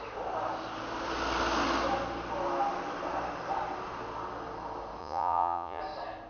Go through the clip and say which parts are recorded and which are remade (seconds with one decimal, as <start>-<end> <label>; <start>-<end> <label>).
0.0-5.0 recorded; 5.0-5.8 remade; 5.8-6.3 recorded